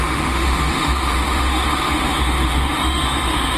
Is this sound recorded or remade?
remade